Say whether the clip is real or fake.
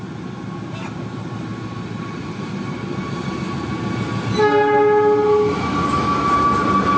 real